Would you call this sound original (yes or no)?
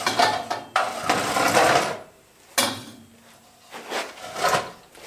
yes